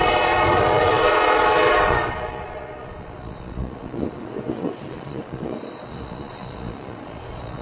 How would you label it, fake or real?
fake